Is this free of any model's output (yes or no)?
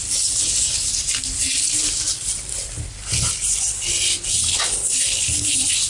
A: yes